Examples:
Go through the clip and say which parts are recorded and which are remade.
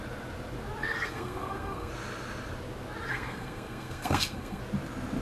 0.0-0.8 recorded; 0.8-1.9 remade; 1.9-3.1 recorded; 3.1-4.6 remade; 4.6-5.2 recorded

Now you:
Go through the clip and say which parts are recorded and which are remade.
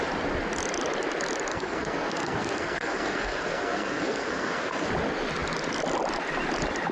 0.0-1.5 recorded; 1.5-4.9 remade; 4.9-6.9 recorded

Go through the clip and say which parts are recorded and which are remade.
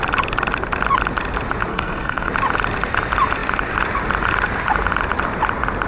0.0-1.7 recorded; 1.7-2.3 remade; 2.3-5.9 recorded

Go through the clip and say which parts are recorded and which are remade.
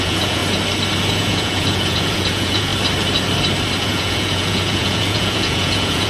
0.0-0.4 remade; 0.4-1.1 recorded; 1.1-2.7 remade; 2.7-3.8 recorded; 3.8-6.1 remade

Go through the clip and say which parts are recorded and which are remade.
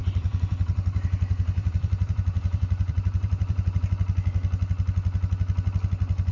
0.0-3.8 remade; 3.8-6.3 recorded